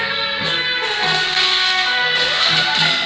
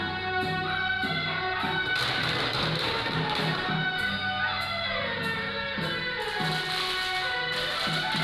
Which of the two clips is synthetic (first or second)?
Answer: first